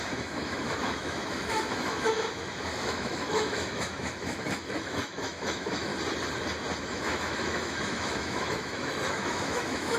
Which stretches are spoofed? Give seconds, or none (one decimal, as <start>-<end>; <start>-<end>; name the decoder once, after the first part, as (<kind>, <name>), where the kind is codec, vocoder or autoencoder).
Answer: 0.0-5.9 (autoencoder, DAC-VAE); 6.8-10.0